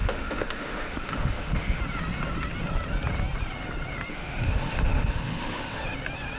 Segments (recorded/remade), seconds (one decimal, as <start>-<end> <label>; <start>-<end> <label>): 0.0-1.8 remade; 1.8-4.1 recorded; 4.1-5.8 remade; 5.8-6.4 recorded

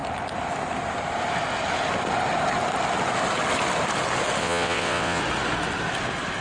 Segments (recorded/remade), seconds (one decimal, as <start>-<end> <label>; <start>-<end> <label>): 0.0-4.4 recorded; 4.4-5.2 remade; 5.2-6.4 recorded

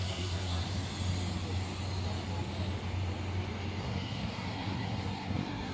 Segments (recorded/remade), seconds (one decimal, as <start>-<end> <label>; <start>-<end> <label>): 0.0-0.6 remade; 0.6-3.8 recorded; 3.8-5.7 remade

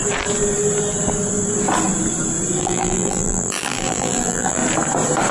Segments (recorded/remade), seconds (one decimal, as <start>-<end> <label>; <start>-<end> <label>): 0.0-2.6 recorded; 2.6-4.6 remade; 4.6-5.3 recorded

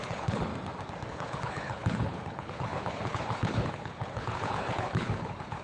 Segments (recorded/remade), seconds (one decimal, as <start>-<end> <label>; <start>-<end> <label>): 0.0-0.5 remade; 0.5-1.1 recorded; 1.1-5.6 remade